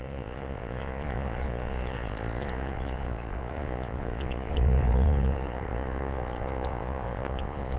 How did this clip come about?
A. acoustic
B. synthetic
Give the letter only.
B